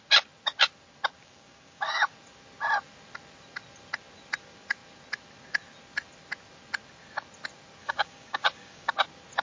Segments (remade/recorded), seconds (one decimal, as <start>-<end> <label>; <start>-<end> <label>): 0.0-1.2 recorded; 1.2-2.1 remade; 2.1-7.8 recorded; 7.8-8.9 remade; 8.9-9.4 recorded